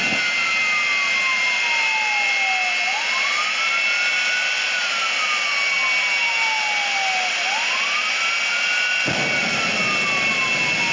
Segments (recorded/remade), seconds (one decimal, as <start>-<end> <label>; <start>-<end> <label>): 0.0-10.9 recorded